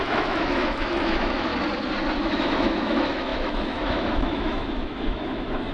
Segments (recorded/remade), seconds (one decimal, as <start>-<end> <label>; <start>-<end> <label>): 0.0-1.5 remade; 1.5-2.2 recorded; 2.2-5.7 remade

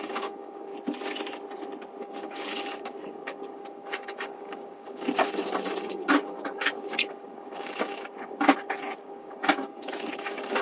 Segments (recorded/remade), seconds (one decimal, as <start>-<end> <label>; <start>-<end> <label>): 0.0-0.7 remade; 0.7-2.0 recorded; 2.0-10.6 remade

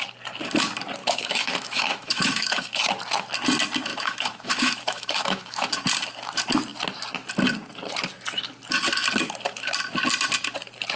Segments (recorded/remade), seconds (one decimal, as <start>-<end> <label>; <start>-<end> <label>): 0.0-1.0 recorded; 1.0-2.9 remade; 2.9-3.9 recorded; 3.9-5.7 remade; 5.7-11.0 recorded

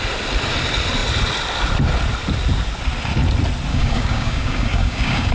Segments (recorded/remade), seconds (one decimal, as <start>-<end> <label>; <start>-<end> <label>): 0.0-3.7 recorded; 3.7-5.3 remade

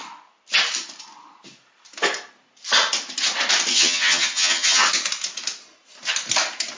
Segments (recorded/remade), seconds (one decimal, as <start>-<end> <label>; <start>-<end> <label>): 0.0-3.7 recorded; 3.7-4.9 remade; 4.9-6.8 recorded

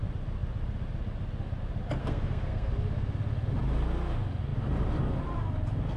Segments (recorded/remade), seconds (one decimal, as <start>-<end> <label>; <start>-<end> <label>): 0.0-2.0 recorded; 2.0-2.7 remade; 2.7-6.0 recorded

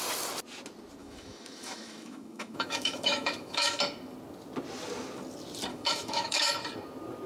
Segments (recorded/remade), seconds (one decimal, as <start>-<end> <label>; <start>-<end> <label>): 0.0-1.0 recorded; 1.0-3.8 remade; 3.8-5.7 recorded; 5.7-6.5 remade; 6.5-7.3 recorded

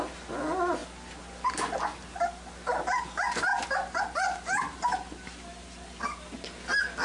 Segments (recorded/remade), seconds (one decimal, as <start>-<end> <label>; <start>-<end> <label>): 0.0-7.0 recorded